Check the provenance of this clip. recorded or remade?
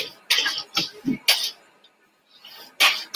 recorded